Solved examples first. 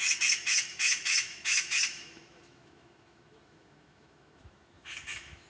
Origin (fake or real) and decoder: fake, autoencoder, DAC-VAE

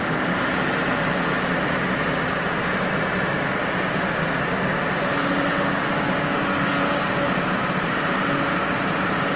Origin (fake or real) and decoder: real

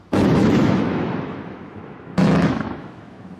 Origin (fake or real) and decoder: fake, autoencoder, DAC-VAE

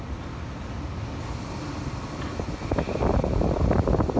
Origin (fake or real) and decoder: real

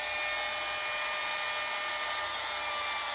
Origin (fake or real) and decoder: real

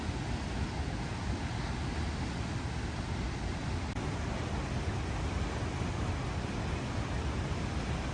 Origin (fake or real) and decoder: real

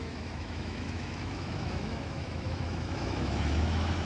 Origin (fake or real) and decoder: fake, autoencoder, DAC-VAE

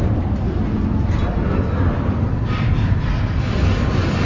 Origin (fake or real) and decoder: real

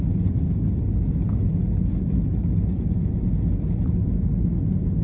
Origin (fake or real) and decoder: real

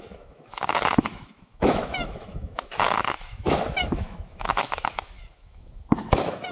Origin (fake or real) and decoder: fake, autoencoder, DAC-VAE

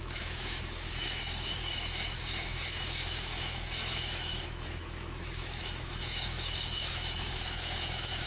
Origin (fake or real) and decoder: fake, autoencoder, DAC-VAE